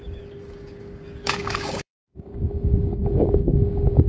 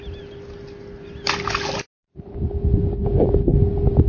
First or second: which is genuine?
second